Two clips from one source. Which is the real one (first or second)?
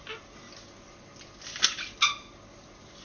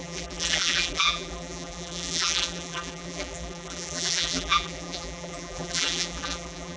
first